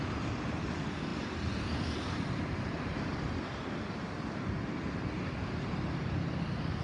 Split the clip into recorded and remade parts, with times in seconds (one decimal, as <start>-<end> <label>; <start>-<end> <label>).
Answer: 0.0-6.8 recorded